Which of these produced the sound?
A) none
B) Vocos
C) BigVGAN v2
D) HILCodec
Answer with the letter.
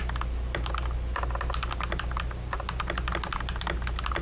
A